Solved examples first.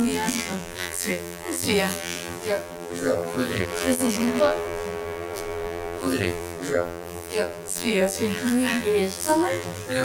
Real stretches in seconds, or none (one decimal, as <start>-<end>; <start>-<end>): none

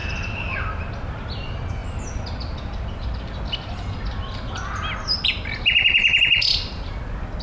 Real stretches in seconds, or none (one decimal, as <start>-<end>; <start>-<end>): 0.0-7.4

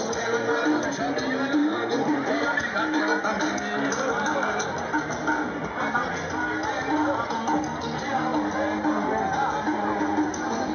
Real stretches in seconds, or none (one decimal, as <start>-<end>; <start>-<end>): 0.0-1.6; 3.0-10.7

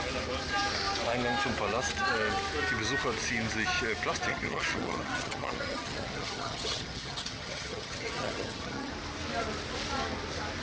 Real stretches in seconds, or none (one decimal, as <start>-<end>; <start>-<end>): 0.0-4.3; 8.9-10.6

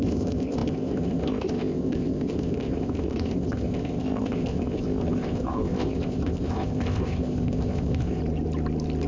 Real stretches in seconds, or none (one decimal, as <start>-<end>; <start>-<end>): 8.2-9.1

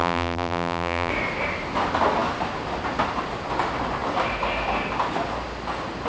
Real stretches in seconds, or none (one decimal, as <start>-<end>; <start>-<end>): 1.1-6.1